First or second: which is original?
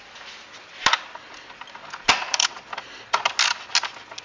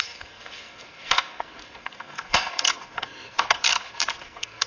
first